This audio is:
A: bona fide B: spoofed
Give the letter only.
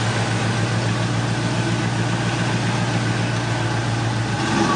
A